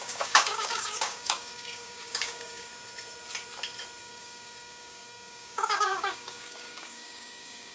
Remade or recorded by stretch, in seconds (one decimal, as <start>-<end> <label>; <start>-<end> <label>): 0.0-2.7 remade; 2.7-4.0 recorded; 4.0-7.7 remade